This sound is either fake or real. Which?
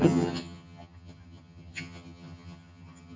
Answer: fake